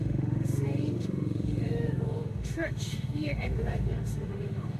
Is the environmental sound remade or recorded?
remade